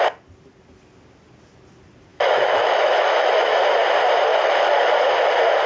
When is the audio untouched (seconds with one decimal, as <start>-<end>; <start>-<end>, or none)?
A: 0.0-2.1; 3.4-4.3; 4.9-5.7